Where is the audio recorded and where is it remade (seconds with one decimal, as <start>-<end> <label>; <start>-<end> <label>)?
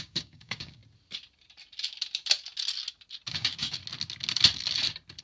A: 0.0-0.8 remade; 0.8-3.3 recorded; 3.3-3.8 remade; 3.8-5.2 recorded